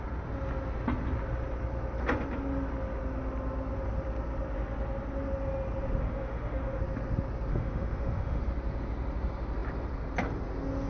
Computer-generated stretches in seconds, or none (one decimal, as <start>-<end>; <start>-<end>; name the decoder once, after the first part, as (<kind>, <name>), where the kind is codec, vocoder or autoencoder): 6.0-6.8 (autoencoder, DAC-VAE); 7.5-8.4